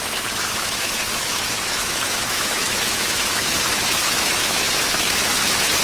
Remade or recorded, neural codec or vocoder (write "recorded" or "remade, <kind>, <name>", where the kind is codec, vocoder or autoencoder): remade, autoencoder, DAC-VAE